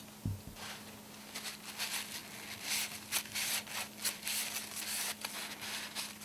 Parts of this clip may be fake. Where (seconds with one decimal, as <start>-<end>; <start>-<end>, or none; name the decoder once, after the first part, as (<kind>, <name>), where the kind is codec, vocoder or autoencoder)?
none